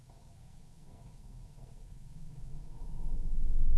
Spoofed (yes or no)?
yes